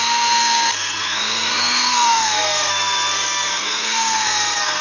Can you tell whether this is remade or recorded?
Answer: remade